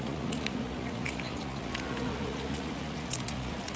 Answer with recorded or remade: remade